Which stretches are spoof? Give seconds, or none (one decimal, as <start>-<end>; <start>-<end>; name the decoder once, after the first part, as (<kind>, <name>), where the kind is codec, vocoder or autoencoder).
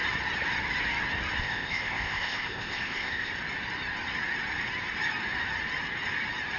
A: 1.4-3.3 (codec, ZipCodec)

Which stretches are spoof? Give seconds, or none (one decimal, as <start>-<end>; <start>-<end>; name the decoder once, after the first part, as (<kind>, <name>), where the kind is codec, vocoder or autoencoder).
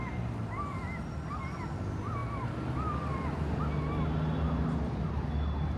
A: none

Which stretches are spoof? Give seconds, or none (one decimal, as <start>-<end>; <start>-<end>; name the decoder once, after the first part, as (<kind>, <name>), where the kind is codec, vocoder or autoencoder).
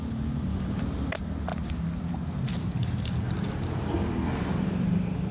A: 0.0-1.5 (vocoder, BigVGAN v2); 2.0-5.3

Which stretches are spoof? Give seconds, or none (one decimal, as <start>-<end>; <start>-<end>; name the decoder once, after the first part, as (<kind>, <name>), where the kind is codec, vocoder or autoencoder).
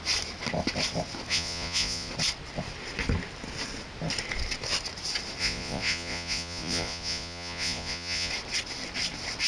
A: 1.3-2.1 (vocoder, Vocos); 5.4-8.3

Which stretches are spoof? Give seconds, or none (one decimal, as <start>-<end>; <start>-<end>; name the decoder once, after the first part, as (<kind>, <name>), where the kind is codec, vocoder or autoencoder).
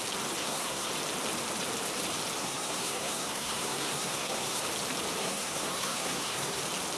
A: 0.4-0.9 (codec, SNAC); 2.4-4.6; 5.2-6.6